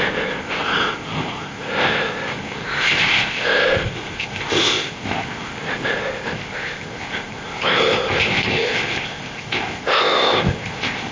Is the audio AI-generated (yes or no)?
yes